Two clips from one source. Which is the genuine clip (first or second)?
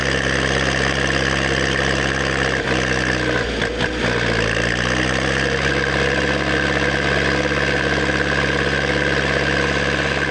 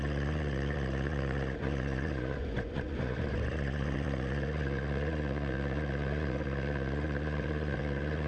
first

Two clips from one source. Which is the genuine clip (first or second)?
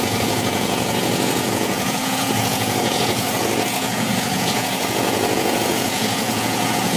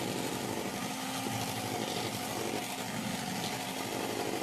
second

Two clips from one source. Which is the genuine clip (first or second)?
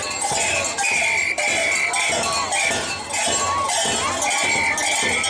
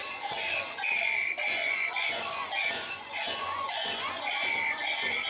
first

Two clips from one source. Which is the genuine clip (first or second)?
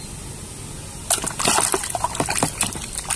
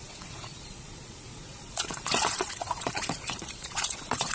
first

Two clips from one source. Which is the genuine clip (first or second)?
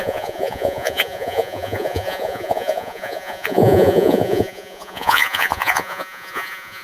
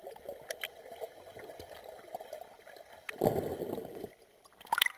second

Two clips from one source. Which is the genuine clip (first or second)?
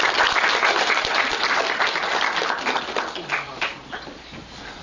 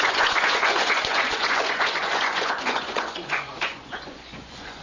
first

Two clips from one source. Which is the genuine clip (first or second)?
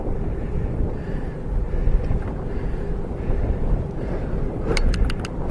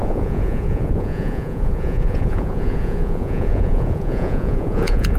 first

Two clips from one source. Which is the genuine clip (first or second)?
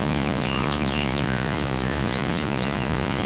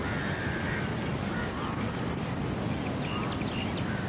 second